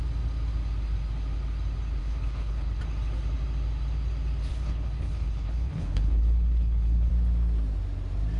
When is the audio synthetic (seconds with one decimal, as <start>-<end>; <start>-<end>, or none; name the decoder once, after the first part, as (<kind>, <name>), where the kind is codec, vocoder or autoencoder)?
2.0-2.8 (codec, HILCodec); 4.5-7.1